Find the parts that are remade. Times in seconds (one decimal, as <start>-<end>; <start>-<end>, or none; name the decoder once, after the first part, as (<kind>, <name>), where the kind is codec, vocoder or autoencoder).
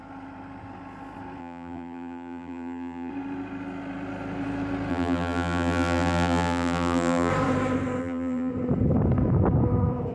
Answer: 1.4-3.1 (vocoder, BigVGAN v2); 4.9-7.3; 8.0-8.5